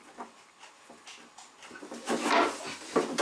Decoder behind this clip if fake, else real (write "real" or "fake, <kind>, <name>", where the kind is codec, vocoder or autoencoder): real